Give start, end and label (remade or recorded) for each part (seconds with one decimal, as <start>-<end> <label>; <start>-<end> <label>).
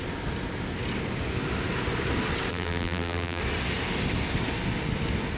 0.0-2.5 recorded; 2.5-3.4 remade; 3.4-5.4 recorded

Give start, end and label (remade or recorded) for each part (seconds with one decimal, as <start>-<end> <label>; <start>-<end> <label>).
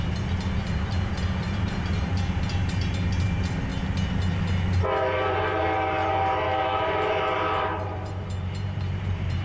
0.0-3.7 remade; 3.7-4.8 recorded; 4.8-9.4 remade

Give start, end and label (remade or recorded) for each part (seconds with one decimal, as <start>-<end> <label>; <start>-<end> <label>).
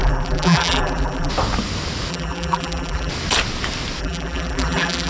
0.0-1.3 remade; 1.3-2.1 recorded; 2.1-3.1 remade; 3.1-4.0 recorded; 4.0-5.1 remade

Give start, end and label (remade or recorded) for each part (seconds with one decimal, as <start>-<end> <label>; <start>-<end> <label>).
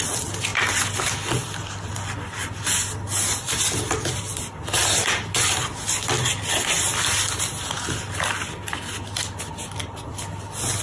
0.0-10.8 recorded